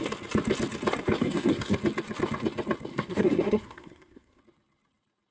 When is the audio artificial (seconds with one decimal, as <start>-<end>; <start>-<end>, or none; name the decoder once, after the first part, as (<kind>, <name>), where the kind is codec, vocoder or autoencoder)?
1.2-1.8 (codec, SNAC); 2.9-4.4